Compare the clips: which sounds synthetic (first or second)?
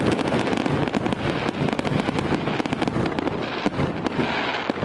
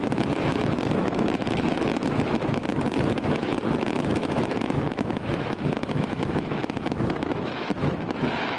second